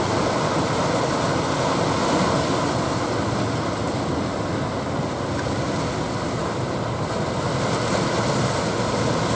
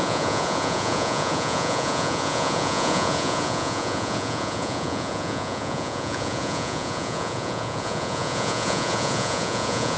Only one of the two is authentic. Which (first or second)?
first